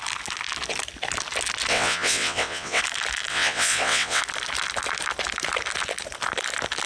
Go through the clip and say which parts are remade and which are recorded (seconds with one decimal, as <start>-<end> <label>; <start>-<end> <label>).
0.0-1.7 recorded; 1.7-2.8 remade; 2.8-3.3 recorded; 3.3-4.2 remade; 4.2-6.9 recorded